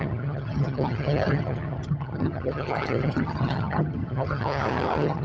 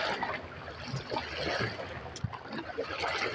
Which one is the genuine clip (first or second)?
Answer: second